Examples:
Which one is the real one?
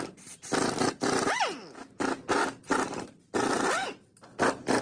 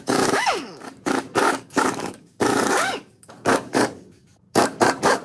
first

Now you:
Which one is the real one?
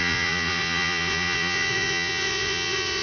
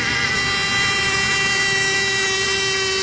second